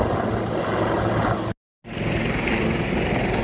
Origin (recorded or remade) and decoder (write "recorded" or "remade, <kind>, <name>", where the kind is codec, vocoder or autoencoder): recorded